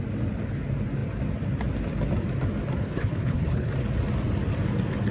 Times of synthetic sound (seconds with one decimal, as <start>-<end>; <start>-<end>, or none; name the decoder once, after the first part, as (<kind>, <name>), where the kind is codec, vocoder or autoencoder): 2.8-3.7 (codec, HILCodec)